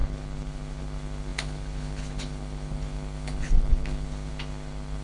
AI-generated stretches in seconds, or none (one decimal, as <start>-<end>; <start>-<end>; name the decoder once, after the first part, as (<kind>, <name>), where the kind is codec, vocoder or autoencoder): 0.0-5.0 (codec, HILCodec)